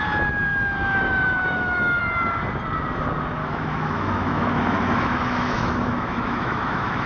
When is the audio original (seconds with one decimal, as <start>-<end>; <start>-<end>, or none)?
0.0-0.5; 2.0-3.4